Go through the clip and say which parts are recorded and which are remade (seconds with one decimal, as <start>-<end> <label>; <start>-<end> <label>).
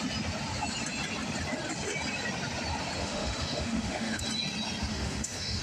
0.0-3.0 recorded; 3.0-4.2 remade; 4.2-4.9 recorded; 4.9-5.6 remade